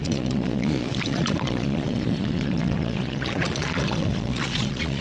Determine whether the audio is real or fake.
fake